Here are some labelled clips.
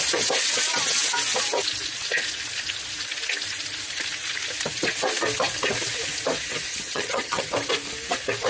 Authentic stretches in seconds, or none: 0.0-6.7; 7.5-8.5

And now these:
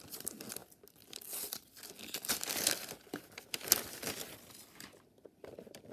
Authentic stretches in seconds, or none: 0.0-5.9

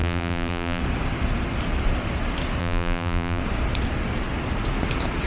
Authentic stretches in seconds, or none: 0.8-2.6; 3.4-5.3